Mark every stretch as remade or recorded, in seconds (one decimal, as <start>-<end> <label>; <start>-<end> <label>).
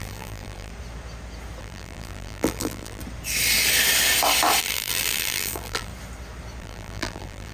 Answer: 0.0-0.7 remade; 0.7-1.6 recorded; 1.6-3.0 remade; 3.0-4.6 recorded; 4.6-5.9 remade; 5.9-6.6 recorded; 6.6-7.5 remade